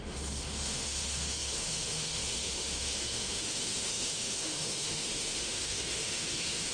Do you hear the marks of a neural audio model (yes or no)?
yes